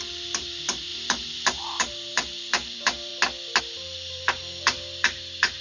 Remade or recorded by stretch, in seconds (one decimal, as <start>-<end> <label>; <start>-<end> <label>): 0.0-3.1 remade; 3.1-3.6 recorded; 3.6-5.6 remade